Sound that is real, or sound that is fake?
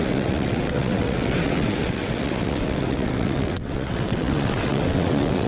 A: fake